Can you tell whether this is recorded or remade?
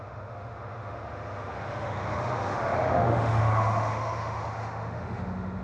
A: remade